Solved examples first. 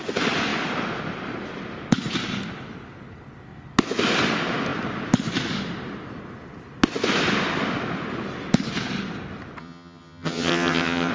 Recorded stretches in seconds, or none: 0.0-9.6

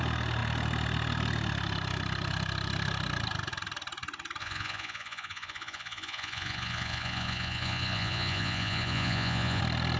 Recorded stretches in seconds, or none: 0.0-4.4; 9.6-10.0